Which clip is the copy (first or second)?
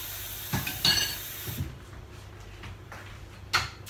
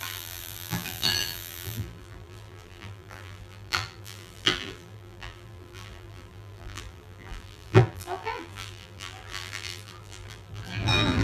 second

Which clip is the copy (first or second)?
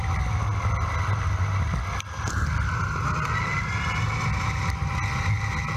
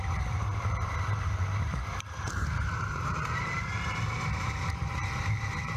second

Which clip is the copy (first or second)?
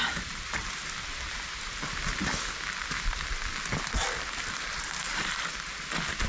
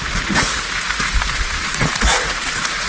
second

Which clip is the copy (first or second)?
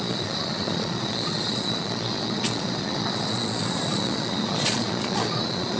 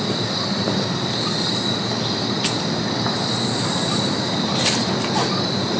first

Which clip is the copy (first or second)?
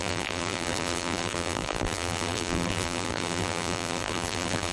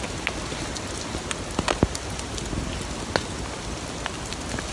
first